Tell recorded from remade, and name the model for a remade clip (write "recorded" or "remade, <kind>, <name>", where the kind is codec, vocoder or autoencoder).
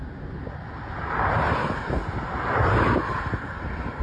recorded